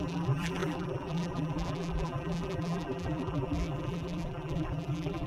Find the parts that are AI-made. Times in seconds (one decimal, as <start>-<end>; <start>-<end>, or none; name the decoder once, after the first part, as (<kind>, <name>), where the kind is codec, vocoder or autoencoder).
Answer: 0.0-5.3 (vocoder, BigVGAN v2)